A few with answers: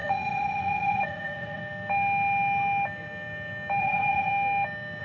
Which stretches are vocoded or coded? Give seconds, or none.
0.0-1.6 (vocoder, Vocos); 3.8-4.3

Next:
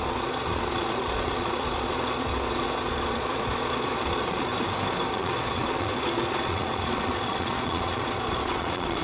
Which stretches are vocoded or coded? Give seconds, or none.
0.0-4.5 (vocoder, Vocos); 5.1-9.0

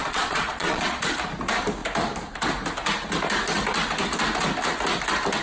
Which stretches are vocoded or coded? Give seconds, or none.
0.0-1.0 (vocoder, Vocos)